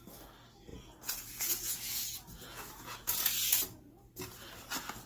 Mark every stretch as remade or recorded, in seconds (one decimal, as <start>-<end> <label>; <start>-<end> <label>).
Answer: 0.0-0.7 recorded; 0.7-3.6 remade; 3.6-5.1 recorded